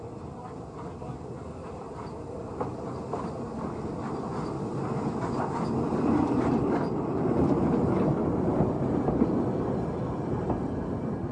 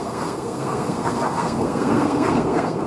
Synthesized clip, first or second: second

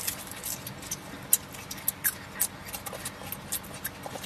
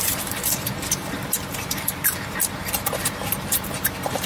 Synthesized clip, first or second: second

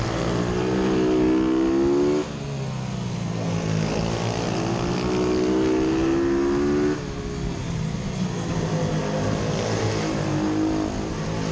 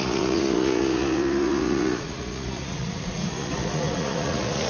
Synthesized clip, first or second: second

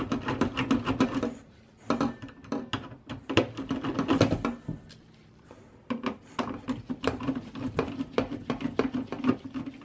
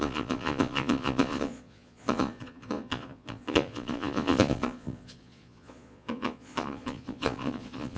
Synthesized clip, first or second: second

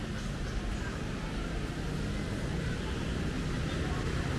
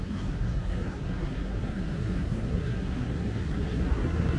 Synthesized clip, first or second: second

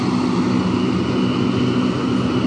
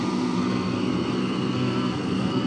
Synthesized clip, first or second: second